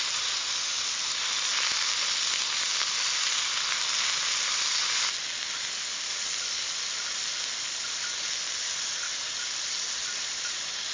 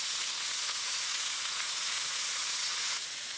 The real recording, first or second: first